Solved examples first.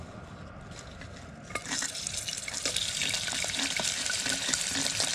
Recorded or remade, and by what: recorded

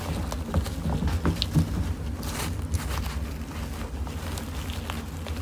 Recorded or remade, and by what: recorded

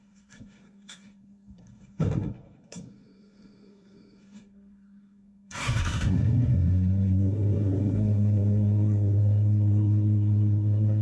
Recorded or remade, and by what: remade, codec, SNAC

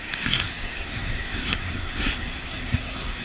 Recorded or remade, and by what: remade, codec, SNAC